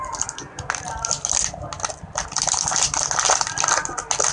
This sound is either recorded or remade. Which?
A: recorded